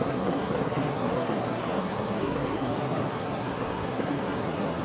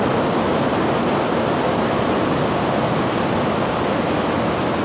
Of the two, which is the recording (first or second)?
second